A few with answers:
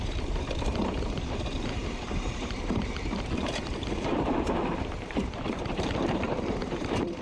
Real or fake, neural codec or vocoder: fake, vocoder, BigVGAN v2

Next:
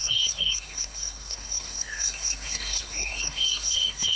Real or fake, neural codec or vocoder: fake, codec, SNAC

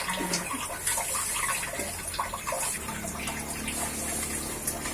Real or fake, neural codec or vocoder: real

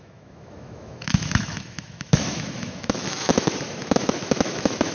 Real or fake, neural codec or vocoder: fake, autoencoder, DAC-VAE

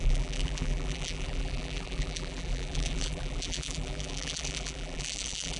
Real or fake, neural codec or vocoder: fake, vocoder, BigVGAN v2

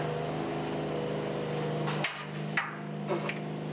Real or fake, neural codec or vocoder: real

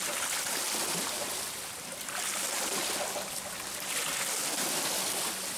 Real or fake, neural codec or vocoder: real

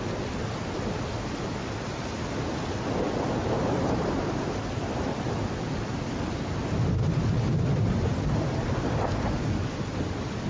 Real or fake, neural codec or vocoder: real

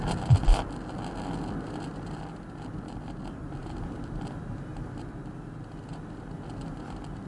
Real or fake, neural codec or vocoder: real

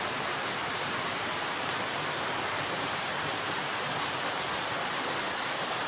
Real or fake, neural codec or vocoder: real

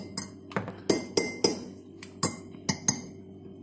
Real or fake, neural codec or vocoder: real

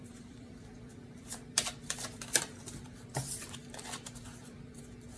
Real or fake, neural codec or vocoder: fake, vocoder, BigVGAN v2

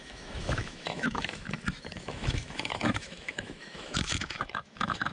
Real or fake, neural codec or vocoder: fake, autoencoder, DAC-VAE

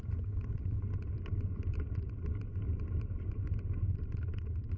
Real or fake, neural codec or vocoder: real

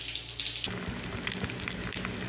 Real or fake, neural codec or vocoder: real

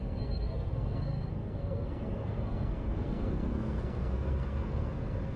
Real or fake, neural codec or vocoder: fake, codec, SNAC